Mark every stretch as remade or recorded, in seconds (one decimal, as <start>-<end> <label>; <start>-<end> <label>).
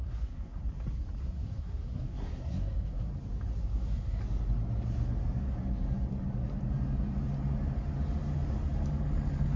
0.0-0.6 remade; 0.6-1.2 recorded; 1.2-3.1 remade; 3.1-3.6 recorded; 3.6-4.2 remade; 4.2-9.6 recorded